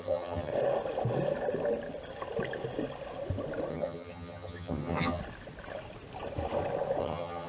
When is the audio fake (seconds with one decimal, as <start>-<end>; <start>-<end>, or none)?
0.0-0.5; 3.7-5.2; 7.0-7.5